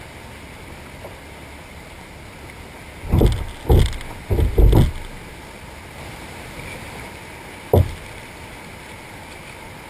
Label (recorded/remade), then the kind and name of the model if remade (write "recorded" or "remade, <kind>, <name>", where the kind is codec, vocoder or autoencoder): recorded